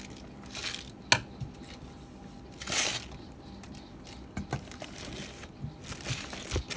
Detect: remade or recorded recorded